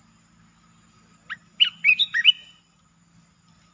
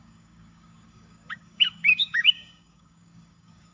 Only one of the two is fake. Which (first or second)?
second